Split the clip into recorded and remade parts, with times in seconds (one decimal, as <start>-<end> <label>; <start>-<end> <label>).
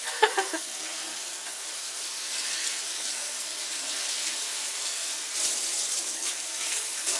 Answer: 0.0-5.3 remade; 5.3-6.0 recorded; 6.0-7.2 remade